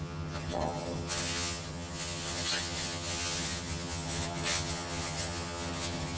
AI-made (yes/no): yes